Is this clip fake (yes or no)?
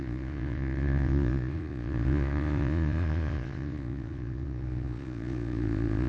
yes